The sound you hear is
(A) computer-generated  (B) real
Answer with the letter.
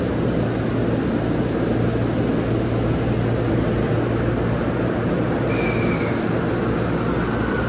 B